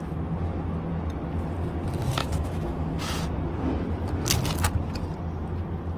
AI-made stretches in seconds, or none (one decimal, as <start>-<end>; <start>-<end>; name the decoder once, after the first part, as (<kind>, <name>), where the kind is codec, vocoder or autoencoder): 2.2-3.0 (autoencoder, DAC-VAE)